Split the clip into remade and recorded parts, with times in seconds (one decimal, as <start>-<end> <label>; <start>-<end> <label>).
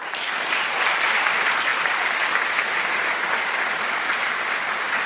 0.0-5.1 recorded